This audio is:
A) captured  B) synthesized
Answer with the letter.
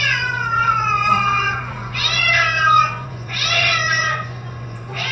B